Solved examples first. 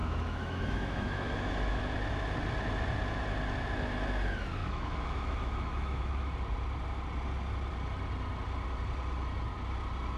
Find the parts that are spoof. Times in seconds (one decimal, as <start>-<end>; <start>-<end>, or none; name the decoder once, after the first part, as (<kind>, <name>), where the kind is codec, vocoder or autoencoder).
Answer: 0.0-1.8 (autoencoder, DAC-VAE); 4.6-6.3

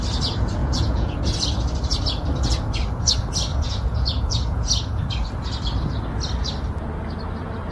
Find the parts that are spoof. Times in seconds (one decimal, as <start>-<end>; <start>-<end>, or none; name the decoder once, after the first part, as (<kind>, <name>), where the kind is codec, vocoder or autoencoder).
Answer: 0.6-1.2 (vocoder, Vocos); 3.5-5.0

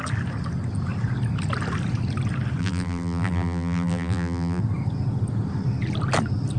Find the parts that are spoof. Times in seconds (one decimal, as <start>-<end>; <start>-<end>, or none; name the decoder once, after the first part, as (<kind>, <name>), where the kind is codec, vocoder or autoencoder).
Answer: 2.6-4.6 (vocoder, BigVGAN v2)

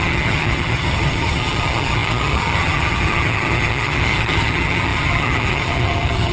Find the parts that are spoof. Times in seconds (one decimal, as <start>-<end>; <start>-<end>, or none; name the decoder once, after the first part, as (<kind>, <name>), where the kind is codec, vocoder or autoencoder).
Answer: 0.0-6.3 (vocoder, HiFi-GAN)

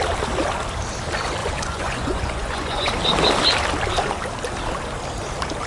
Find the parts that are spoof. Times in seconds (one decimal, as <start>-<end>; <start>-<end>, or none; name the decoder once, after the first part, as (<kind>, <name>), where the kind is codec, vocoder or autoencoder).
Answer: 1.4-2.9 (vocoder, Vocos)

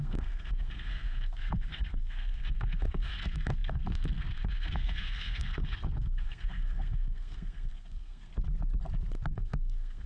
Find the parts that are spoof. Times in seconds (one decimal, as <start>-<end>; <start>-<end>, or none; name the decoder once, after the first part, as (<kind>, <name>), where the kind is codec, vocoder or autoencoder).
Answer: 0.0-8.3 (codec, SNAC); 9.3-10.1